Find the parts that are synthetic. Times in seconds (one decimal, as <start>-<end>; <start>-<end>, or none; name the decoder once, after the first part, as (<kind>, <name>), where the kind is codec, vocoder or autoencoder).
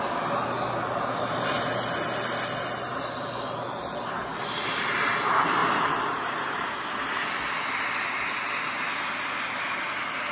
0.8-1.6 (vocoder, BigVGAN v2); 5.6-6.8